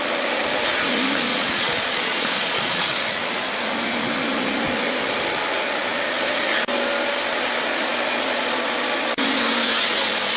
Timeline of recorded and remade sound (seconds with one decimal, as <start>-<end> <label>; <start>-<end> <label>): 0.0-1.3 recorded; 1.3-2.8 remade; 2.8-10.4 recorded